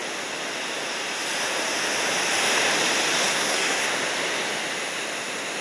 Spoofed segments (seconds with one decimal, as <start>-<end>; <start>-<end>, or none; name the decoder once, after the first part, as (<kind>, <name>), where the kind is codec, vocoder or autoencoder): 3.3-3.9 (codec, SNAC)